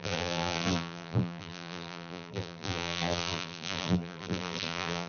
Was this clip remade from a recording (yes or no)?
yes